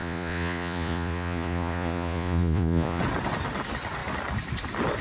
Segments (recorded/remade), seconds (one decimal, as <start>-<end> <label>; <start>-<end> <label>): 0.0-3.0 remade; 3.0-5.0 recorded